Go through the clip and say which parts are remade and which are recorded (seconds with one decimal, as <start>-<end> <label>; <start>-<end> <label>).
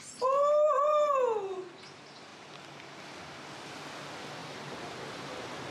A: 0.0-4.4 recorded; 4.4-4.9 remade; 4.9-5.7 recorded